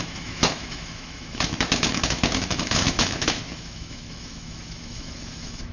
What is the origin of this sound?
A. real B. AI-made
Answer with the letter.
B